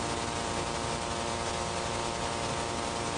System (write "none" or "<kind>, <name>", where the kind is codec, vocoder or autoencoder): none